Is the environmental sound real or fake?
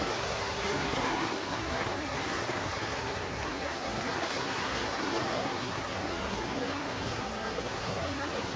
fake